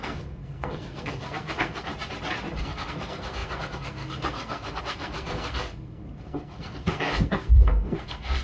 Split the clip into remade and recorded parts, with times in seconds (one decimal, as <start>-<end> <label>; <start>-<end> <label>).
0.0-1.9 remade; 1.9-2.6 recorded; 2.6-8.4 remade